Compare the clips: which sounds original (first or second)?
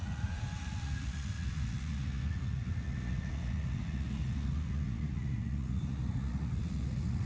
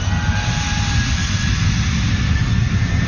second